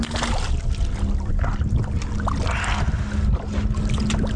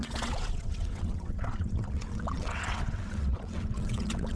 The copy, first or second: second